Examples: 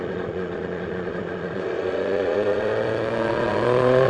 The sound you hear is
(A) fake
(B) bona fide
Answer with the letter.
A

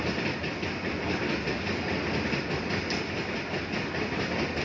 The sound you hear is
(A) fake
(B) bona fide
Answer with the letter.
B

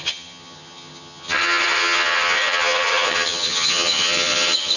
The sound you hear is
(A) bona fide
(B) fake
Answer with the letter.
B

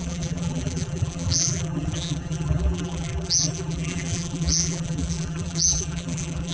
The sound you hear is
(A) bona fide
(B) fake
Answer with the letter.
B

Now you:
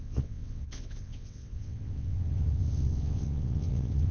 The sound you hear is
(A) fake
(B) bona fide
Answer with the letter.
A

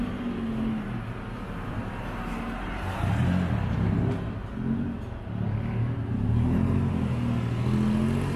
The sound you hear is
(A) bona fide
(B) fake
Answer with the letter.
A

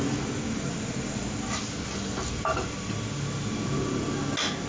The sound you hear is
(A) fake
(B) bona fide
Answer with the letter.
B